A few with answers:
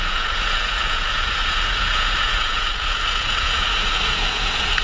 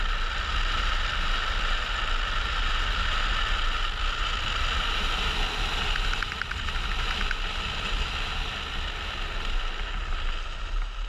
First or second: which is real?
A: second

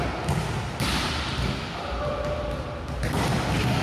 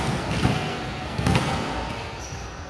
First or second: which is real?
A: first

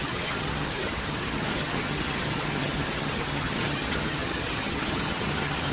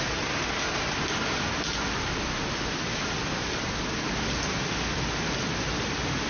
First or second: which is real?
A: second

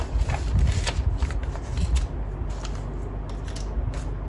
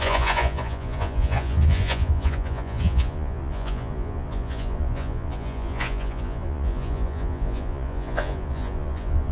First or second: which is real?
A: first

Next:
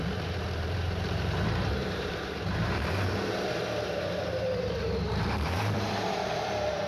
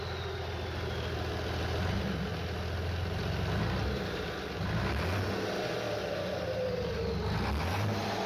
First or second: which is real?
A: second